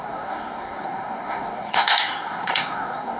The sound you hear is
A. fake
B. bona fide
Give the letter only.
A